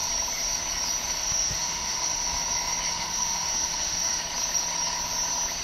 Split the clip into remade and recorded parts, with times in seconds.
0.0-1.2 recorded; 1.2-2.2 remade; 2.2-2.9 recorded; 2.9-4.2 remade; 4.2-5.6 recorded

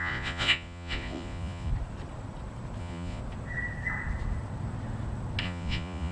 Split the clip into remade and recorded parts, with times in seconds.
0.0-1.7 remade; 1.7-2.8 recorded; 2.8-3.2 remade; 3.2-5.4 recorded; 5.4-6.1 remade

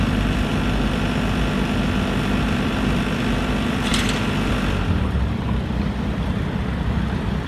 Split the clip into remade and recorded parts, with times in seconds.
0.0-0.5 remade; 0.5-2.4 recorded; 2.4-3.9 remade; 3.9-4.5 recorded; 4.5-7.5 remade

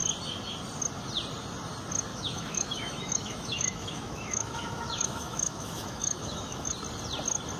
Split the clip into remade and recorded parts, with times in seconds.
0.0-2.1 recorded; 2.1-6.7 remade; 6.7-7.6 recorded